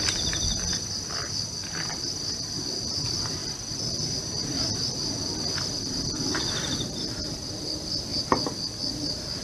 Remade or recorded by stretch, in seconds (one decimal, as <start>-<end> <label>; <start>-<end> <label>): 0.0-9.4 recorded